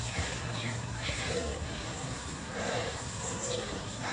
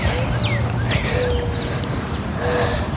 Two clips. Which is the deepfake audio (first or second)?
first